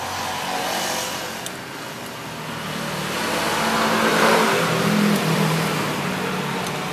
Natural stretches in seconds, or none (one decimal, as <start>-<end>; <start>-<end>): 0.0-4.1; 6.0-6.9